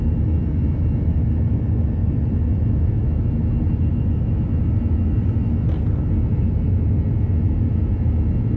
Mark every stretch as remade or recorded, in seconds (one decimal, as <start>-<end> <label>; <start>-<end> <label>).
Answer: 0.0-2.0 recorded; 2.0-2.6 remade; 2.6-8.6 recorded